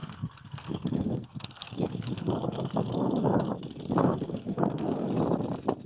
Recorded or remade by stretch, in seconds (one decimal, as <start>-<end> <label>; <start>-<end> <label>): 0.0-3.5 remade; 3.5-4.0 recorded; 4.0-5.1 remade; 5.1-5.9 recorded